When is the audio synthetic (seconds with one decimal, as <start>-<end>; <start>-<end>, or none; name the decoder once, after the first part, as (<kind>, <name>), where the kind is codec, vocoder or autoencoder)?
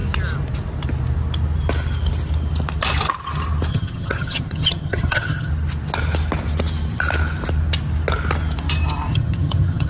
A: 3.7-5.5 (vocoder, HiFi-GAN); 9.1-9.9